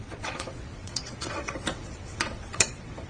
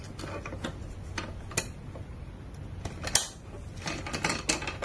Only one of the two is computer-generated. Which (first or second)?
first